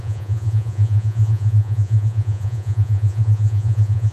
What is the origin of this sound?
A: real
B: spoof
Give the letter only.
B